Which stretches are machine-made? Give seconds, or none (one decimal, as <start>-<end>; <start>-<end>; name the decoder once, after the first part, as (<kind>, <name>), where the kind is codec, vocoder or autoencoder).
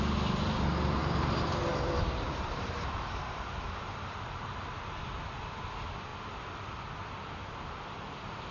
1.0-5.0 (vocoder, BigVGAN v2)